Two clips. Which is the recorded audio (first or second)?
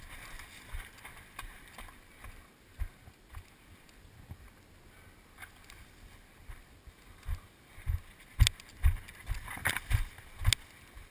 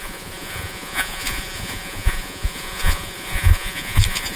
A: first